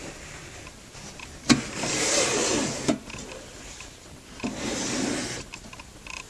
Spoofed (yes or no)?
no